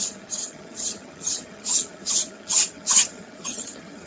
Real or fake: fake